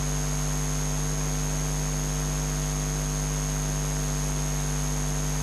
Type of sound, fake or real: real